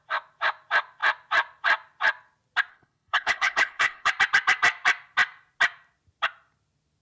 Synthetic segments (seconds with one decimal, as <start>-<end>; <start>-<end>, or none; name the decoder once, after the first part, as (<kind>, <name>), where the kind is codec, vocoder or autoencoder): 2.7-4.1 (codec, HILCodec)